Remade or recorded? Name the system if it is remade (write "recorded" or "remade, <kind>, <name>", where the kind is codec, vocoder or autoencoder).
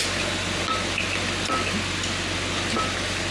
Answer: recorded